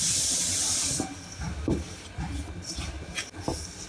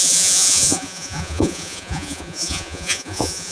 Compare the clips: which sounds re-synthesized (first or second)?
second